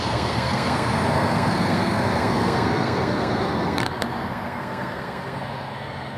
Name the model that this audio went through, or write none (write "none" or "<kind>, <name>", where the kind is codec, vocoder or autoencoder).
codec, SNAC